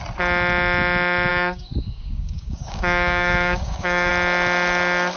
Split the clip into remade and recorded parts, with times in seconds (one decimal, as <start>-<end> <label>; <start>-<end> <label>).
0.0-1.3 recorded; 1.3-4.1 remade; 4.1-5.2 recorded

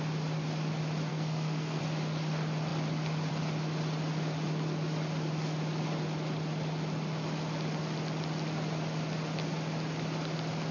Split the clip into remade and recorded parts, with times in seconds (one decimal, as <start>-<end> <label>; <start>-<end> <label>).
0.0-1.1 recorded; 1.1-1.8 remade; 1.8-10.7 recorded

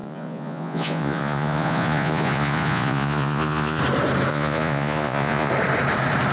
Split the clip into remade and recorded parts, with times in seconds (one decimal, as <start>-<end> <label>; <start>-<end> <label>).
0.0-3.8 remade; 3.8-4.3 recorded; 4.3-5.5 remade; 5.5-6.3 recorded

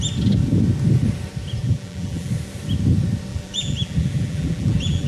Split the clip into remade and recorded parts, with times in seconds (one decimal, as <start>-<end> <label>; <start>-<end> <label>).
0.0-1.6 recorded; 1.6-2.3 remade; 2.3-3.3 recorded; 3.3-5.1 remade

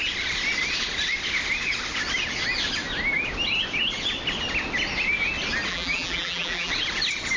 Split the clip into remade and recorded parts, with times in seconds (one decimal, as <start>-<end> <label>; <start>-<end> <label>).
0.0-5.7 recorded; 5.7-6.7 remade; 6.7-7.4 recorded

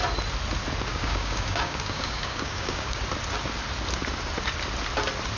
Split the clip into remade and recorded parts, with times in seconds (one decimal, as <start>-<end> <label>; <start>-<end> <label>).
0.0-0.9 recorded; 0.9-3.0 remade; 3.0-5.4 recorded